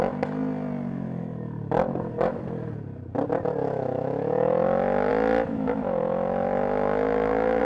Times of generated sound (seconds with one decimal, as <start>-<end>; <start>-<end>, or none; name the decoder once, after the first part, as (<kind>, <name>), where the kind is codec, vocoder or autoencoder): 3.6-5.1 (autoencoder, DAC-VAE); 5.5-7.6